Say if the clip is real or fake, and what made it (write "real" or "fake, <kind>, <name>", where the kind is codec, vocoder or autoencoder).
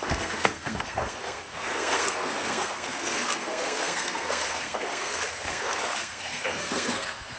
fake, codec, SNAC